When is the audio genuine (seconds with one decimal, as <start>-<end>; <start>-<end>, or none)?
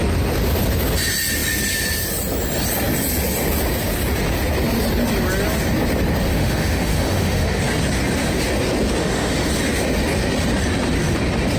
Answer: 0.0-6.3; 7.6-9.0; 9.5-11.6